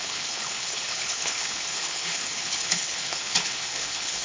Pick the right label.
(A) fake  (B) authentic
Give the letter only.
A